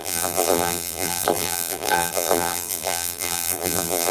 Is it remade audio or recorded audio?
remade